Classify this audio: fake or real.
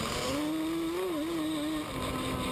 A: real